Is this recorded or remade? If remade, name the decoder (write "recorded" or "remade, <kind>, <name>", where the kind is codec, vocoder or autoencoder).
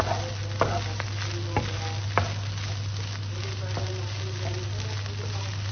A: recorded